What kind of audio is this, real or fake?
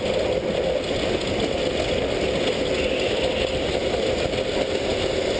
real